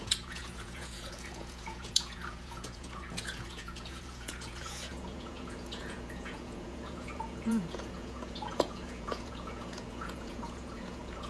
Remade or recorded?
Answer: remade